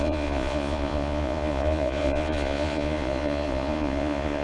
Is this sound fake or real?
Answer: fake